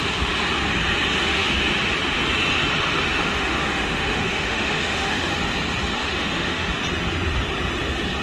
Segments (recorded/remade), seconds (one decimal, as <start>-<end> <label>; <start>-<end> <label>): 0.0-1.2 recorded; 1.2-1.7 remade; 1.7-3.2 recorded; 3.2-5.3 remade; 5.3-6.0 recorded; 6.0-6.7 remade; 6.7-8.2 recorded